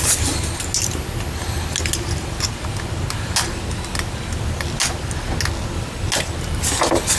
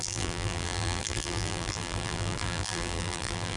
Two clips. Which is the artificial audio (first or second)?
second